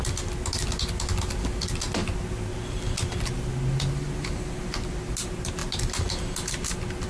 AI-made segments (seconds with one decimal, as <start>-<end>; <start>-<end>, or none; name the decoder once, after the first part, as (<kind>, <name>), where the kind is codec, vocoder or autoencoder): none